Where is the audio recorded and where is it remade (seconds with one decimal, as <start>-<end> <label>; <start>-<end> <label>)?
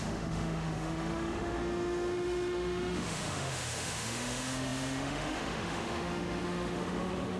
0.0-7.4 remade